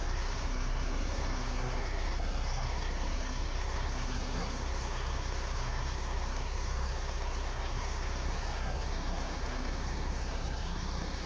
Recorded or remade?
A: remade